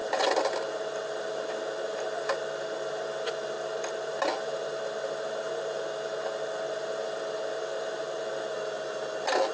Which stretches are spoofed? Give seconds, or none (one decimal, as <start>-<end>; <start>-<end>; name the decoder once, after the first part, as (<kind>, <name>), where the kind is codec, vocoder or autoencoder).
none